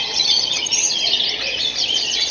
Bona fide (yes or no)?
no